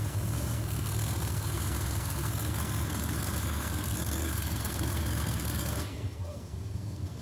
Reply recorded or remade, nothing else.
remade